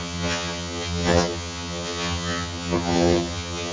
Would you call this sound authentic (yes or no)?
no